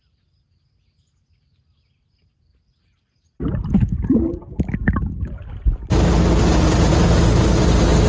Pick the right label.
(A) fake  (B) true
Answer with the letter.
B